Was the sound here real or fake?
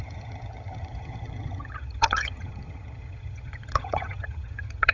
fake